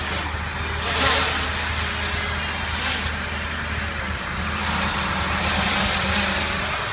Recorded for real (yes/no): yes